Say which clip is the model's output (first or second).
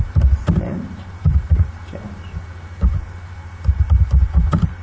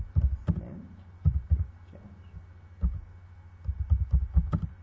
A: first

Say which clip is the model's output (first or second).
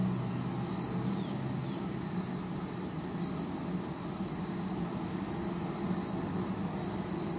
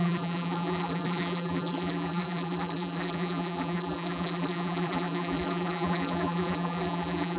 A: second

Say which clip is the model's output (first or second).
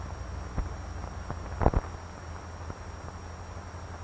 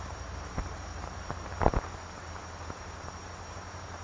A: second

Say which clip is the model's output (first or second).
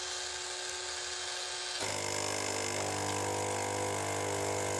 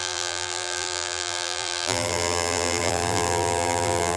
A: second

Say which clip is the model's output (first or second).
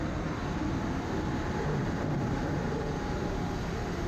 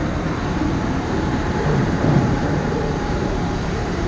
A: second